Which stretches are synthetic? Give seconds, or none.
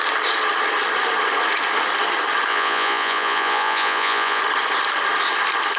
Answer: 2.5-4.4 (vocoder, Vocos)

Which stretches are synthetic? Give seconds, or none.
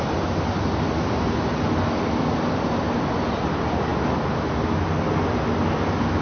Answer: none